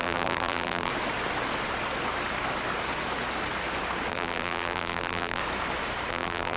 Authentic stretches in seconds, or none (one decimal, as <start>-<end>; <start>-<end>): 0.9-4.1; 5.4-6.1